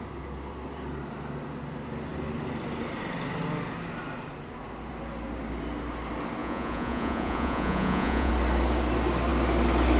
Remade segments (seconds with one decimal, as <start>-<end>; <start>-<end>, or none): 6.4-8.3